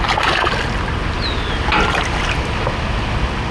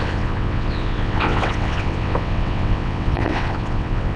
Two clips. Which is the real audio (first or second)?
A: first